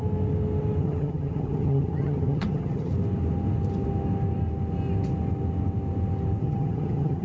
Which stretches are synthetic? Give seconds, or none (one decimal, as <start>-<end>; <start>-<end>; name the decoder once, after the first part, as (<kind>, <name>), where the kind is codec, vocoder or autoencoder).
0.8-2.9 (vocoder, HiFi-GAN); 6.4-7.2